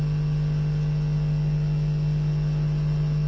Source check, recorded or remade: recorded